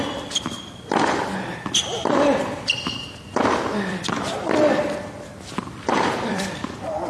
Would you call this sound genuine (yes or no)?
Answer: no